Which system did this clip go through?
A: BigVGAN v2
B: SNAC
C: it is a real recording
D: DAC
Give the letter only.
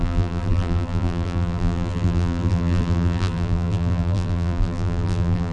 A